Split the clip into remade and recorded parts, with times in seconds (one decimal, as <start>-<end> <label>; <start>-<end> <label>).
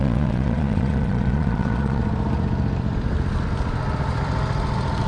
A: 0.0-2.0 remade; 2.0-5.1 recorded